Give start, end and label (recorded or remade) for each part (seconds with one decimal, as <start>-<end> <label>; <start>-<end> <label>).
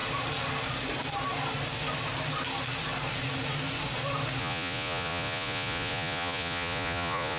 0.0-4.4 recorded; 4.4-7.4 remade